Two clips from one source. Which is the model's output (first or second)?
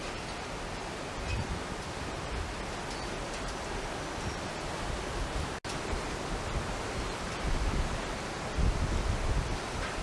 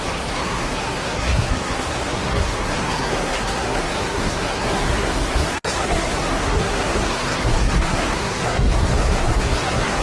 second